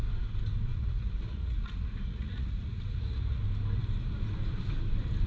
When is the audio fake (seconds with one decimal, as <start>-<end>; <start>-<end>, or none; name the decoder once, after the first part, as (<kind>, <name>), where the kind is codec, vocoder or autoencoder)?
0.7-3.4 (vocoder, Vocos)